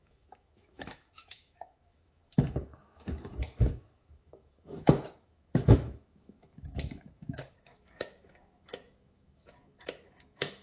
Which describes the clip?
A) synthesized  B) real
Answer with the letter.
A